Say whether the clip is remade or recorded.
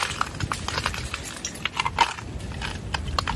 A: recorded